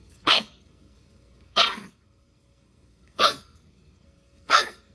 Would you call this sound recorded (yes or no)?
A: no